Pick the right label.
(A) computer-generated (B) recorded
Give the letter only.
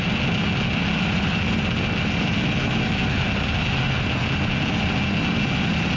B